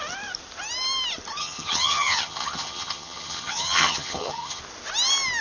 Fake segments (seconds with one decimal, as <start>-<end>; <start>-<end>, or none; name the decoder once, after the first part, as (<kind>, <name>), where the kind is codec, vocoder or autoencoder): 1.4-4.6 (vocoder, HiFi-GAN)